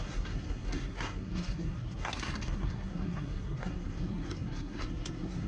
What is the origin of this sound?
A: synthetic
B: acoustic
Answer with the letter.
A